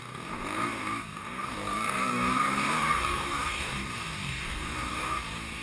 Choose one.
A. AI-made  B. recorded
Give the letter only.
A